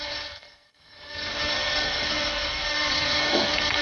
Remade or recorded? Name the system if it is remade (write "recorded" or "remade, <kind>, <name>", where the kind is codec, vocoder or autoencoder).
remade, codec, SNAC